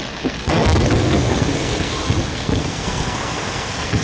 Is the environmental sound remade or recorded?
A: remade